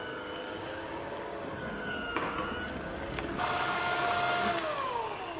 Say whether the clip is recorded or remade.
remade